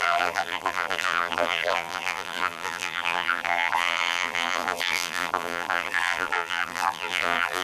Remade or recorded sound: remade